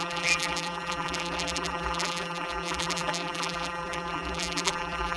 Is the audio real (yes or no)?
no